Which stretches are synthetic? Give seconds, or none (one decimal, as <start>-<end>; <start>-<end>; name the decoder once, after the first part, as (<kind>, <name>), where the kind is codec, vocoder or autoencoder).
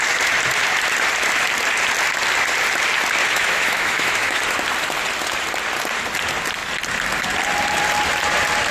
3.2-4.4 (autoencoder, DAC-VAE)